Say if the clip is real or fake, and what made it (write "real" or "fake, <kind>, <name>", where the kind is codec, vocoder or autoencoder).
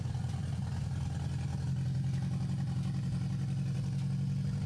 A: real